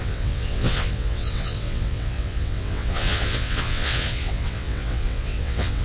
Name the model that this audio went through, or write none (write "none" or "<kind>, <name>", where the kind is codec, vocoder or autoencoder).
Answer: vocoder, WaveNeXt